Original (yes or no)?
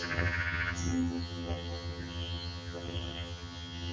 no